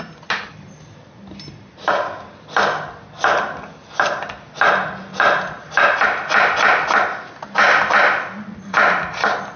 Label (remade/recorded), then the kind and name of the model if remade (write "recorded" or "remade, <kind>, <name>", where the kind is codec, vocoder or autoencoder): recorded